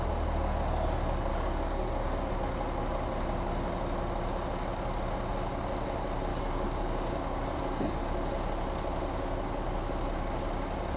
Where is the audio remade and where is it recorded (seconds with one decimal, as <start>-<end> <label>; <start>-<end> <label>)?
0.0-1.3 recorded; 1.3-2.3 remade; 2.3-6.3 recorded; 6.3-8.0 remade; 8.0-11.0 recorded